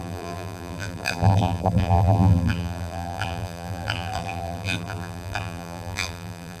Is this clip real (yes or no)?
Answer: no